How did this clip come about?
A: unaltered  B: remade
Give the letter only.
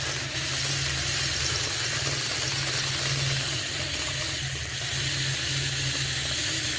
A